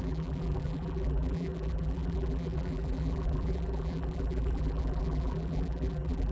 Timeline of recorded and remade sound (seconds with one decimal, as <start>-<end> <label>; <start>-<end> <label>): 0.0-6.3 remade